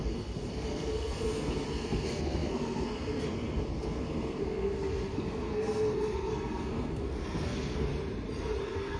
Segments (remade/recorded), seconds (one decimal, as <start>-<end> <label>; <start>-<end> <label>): 0.0-7.9 remade; 7.9-8.6 recorded; 8.6-9.0 remade